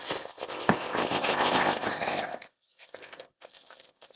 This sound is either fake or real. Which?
fake